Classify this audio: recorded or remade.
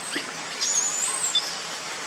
recorded